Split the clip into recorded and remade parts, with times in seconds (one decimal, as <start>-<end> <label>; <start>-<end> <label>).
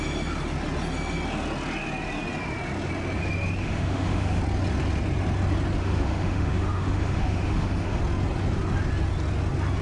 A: 0.0-3.6 recorded; 3.6-4.4 remade; 4.4-5.8 recorded; 5.8-8.0 remade; 8.0-9.8 recorded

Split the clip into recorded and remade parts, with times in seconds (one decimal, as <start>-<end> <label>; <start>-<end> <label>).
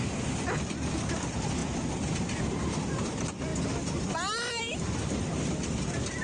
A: 0.0-6.2 recorded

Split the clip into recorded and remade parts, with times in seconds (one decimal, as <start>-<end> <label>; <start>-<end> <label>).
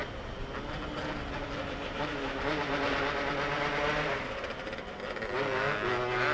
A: 0.0-6.3 recorded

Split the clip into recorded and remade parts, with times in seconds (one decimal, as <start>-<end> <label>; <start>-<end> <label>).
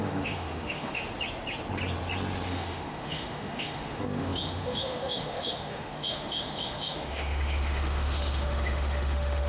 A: 0.0-1.0 remade; 1.0-2.5 recorded; 2.5-9.5 remade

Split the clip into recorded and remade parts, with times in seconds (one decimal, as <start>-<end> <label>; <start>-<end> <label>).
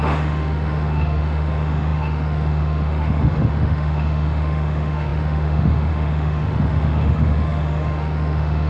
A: 0.0-8.7 remade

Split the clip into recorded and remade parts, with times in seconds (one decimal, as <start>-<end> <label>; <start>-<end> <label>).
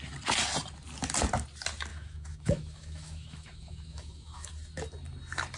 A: 0.0-1.9 recorded; 1.9-4.5 remade; 4.5-5.6 recorded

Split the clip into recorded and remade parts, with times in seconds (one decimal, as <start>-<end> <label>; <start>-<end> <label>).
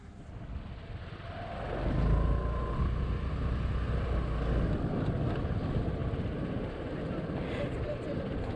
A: 0.0-8.6 recorded